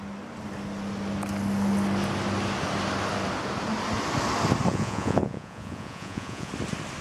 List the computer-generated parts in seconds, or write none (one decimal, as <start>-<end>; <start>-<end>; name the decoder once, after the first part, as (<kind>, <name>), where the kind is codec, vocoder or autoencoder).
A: 4.7-6.5 (vocoder, Vocos)